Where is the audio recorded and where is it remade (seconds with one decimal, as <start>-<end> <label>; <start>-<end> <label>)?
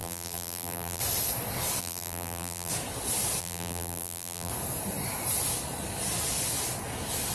0.0-1.0 remade; 1.0-1.8 recorded; 1.8-2.7 remade; 2.7-3.4 recorded; 3.4-4.5 remade; 4.5-7.3 recorded